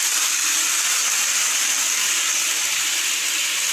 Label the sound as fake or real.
real